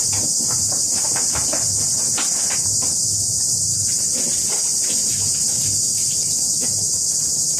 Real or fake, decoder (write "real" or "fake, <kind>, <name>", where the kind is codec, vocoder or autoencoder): real